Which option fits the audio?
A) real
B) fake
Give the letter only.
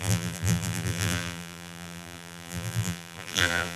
B